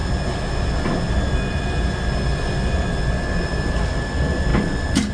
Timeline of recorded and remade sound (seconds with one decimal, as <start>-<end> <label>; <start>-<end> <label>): 0.0-5.1 recorded